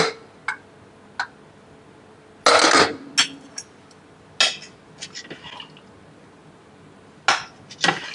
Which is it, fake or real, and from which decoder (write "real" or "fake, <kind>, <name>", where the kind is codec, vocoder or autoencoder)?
real